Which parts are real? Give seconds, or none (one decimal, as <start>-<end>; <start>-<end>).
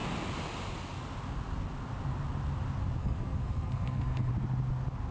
0.0-3.0; 4.3-5.1